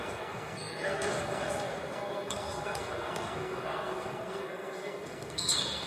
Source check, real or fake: fake